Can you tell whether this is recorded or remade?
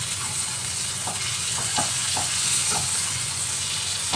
remade